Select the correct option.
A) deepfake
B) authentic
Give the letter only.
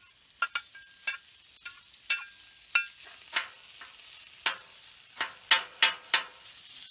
B